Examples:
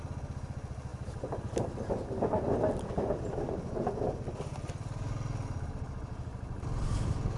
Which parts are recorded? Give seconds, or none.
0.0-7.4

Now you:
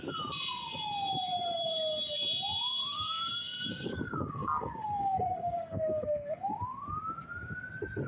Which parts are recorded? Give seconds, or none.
0.0-2.8; 6.6-8.1